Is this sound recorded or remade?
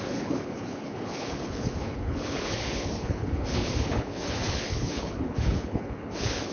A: remade